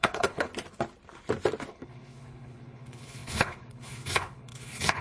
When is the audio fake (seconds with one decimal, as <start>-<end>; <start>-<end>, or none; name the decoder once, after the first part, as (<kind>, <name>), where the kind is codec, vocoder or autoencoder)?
0.0-0.5 (codec, HILCodec); 1.7-5.0